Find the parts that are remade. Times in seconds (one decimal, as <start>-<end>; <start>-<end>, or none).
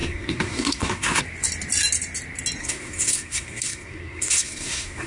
0.0-1.2; 2.6-5.1